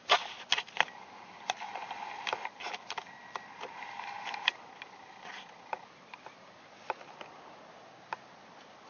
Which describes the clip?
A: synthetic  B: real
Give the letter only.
B